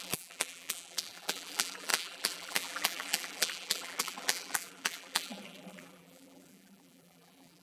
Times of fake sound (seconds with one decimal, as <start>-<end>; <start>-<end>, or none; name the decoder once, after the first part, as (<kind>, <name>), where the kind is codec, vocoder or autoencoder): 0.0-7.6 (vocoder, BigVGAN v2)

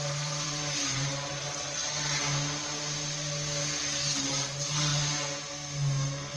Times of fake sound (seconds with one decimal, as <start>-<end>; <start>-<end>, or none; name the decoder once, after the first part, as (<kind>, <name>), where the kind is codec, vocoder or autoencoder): 0.0-1.8 (vocoder, BigVGAN v2); 3.8-4.9

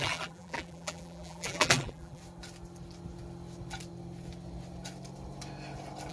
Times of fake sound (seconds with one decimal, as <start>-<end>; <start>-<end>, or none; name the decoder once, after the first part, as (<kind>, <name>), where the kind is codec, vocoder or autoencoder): 0.0-2.2 (vocoder, BigVGAN v2)

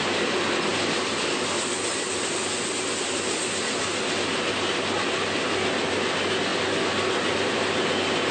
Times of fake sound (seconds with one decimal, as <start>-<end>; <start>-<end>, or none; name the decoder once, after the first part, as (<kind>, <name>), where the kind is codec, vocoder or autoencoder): none

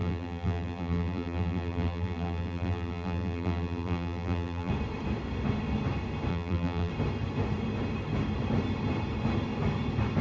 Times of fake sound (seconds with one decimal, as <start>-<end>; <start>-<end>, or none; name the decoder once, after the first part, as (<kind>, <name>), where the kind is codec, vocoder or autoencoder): 0.0-4.7 (vocoder, BigVGAN v2); 6.3-6.9

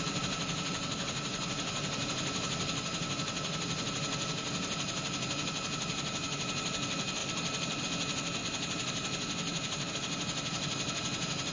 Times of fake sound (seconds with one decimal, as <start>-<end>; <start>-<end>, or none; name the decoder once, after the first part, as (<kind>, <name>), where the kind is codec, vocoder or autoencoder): none

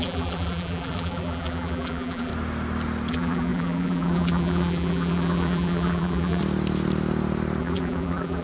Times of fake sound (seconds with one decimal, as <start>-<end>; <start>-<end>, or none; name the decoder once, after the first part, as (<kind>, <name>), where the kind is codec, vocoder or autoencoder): 0.0-2.3 (vocoder, BigVGAN v2); 3.1-6.4; 7.6-8.4

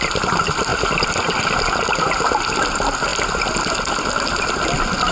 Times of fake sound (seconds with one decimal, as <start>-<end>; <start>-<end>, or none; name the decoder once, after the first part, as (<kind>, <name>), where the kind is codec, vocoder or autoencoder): 0.0-0.7 (vocoder, BigVGAN v2); 2.4-5.1